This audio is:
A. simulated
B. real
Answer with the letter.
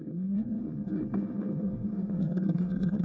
A